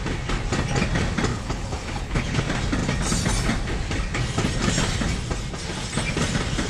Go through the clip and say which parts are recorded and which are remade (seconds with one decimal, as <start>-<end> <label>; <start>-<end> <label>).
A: 0.0-1.3 recorded; 1.3-2.4 remade; 2.4-6.7 recorded